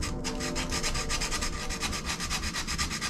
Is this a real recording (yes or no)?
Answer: yes